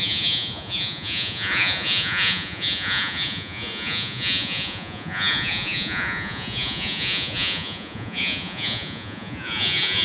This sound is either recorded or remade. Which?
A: remade